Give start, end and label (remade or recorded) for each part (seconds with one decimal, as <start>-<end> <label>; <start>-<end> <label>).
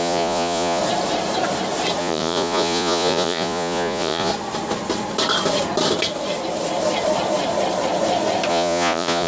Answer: 0.0-0.8 remade; 0.8-2.0 recorded; 2.0-4.3 remade; 4.3-8.5 recorded; 8.5-9.3 remade